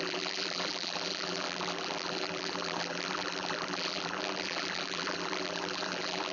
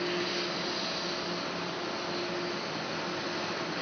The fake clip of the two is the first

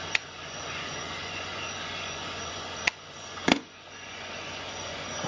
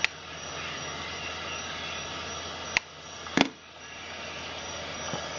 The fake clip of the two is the first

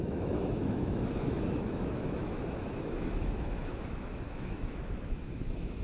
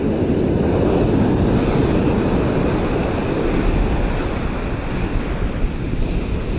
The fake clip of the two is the first